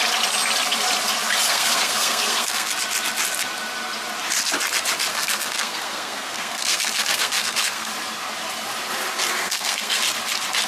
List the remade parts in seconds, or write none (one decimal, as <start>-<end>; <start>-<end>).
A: 1.5-2.7; 5.1-7.9; 9.4-10.0